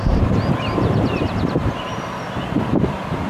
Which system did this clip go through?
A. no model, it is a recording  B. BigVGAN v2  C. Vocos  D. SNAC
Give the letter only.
B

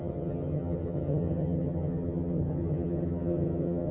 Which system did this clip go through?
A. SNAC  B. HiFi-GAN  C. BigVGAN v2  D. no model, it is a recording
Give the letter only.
B